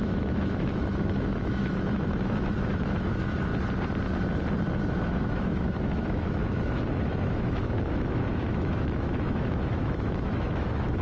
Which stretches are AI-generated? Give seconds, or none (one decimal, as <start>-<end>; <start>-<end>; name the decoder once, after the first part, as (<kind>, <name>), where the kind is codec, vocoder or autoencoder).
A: 0.0-3.5 (autoencoder, DAC-VAE); 4.9-11.0

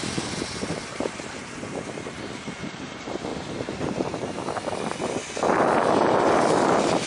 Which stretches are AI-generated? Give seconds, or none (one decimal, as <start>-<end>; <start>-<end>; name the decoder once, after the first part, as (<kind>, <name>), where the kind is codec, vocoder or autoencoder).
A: 0.9-2.6 (vocoder, BigVGAN v2); 3.3-4.5